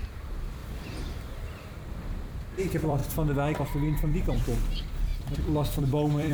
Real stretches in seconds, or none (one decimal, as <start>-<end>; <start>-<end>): 3.0-3.6; 5.1-5.8